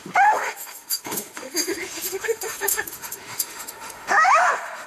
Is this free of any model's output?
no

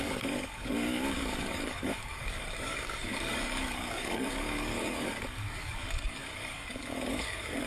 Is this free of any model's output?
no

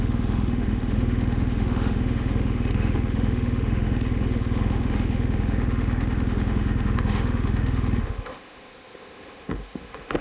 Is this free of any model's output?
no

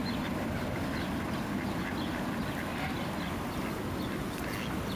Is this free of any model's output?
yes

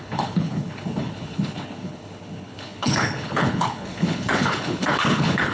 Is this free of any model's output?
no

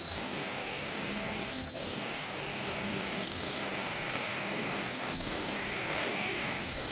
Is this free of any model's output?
no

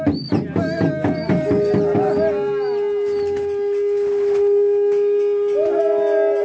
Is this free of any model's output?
yes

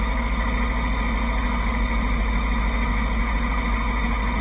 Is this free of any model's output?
yes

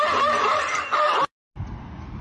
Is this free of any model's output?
no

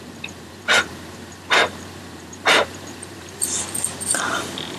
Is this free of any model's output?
no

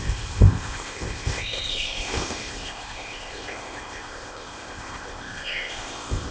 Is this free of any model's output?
no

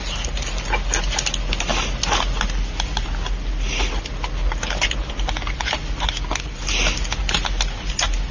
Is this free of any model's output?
yes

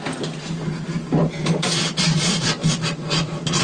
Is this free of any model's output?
yes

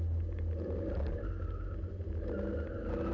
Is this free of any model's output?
yes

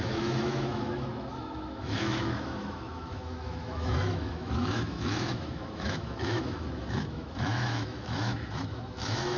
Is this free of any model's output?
no